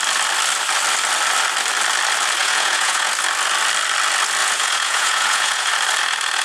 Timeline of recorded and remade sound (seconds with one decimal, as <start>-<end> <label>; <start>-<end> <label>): 0.0-2.4 recorded; 2.4-3.1 remade; 3.1-4.4 recorded; 4.4-5.7 remade; 5.7-6.4 recorded